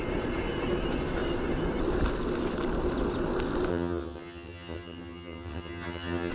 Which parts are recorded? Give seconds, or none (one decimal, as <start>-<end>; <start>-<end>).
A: 0.0-3.7